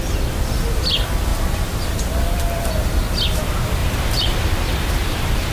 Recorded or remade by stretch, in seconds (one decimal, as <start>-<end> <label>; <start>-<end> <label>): 0.0-1.3 recorded; 1.3-2.7 remade; 2.7-3.8 recorded; 3.8-5.5 remade

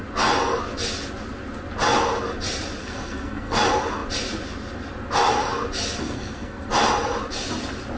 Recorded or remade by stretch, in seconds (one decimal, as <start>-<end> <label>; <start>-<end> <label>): 0.0-2.8 recorded; 2.8-3.6 remade; 3.6-6.0 recorded; 6.0-6.7 remade; 6.7-8.0 recorded

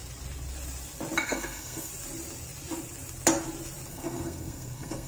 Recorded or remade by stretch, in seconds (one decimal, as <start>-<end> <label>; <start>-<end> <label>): 0.0-1.2 recorded; 1.2-1.9 remade; 1.9-3.9 recorded; 3.9-5.1 remade

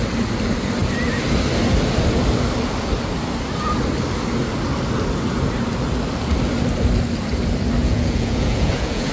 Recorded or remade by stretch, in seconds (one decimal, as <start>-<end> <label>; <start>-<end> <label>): 0.0-7.8 recorded; 7.8-9.1 remade

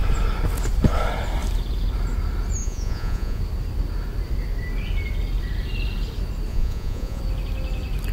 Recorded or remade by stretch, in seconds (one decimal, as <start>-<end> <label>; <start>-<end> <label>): 0.0-2.6 recorded; 2.6-3.4 remade; 3.4-6.5 recorded; 6.5-7.2 remade; 7.2-8.1 recorded

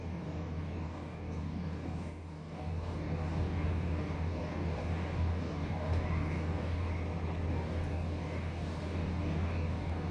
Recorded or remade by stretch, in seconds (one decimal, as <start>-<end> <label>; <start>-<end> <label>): 0.0-6.9 remade; 6.9-7.5 recorded; 7.5-10.1 remade

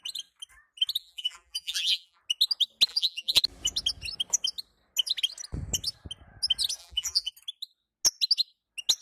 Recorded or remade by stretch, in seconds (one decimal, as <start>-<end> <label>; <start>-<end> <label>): 0.0-1.0 recorded; 1.0-2.2 remade; 2.2-2.9 recorded; 2.9-3.4 remade; 3.4-6.8 recorded; 6.8-7.3 remade; 7.3-9.0 recorded